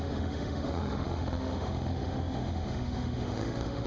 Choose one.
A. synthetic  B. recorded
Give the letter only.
A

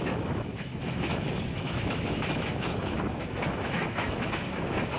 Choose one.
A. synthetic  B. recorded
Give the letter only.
A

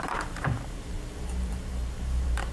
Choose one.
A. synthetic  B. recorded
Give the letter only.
A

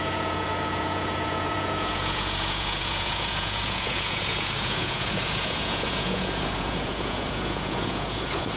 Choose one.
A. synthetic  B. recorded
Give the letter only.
A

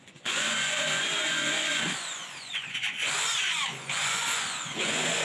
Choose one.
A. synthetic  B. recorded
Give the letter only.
A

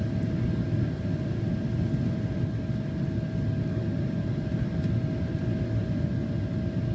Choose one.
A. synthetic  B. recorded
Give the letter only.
B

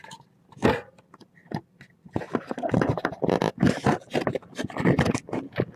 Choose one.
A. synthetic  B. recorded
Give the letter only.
B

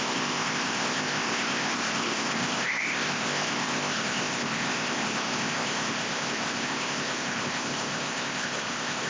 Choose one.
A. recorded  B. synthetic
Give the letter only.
B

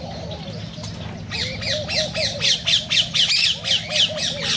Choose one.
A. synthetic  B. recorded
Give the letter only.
B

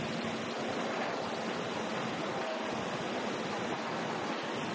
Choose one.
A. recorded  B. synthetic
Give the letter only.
B